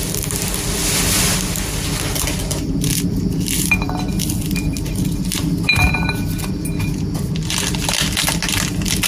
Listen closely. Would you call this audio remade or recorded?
recorded